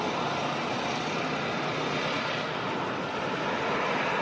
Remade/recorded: recorded